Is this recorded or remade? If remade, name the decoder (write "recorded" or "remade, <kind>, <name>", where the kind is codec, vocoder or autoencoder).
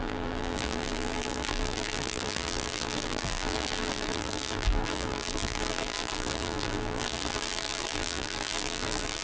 remade, vocoder, BigVGAN v2